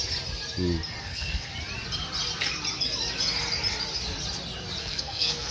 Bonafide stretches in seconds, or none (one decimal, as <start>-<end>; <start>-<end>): 0.0-1.0; 1.5-4.8